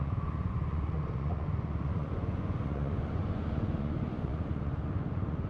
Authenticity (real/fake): fake